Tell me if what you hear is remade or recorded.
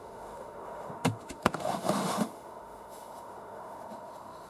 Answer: remade